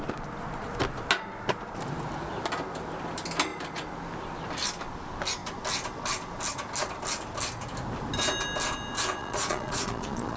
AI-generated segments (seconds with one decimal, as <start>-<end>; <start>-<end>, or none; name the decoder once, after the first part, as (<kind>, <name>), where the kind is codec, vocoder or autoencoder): 9.2-10.4 (vocoder, Vocos)